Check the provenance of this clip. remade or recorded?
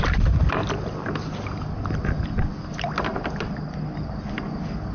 recorded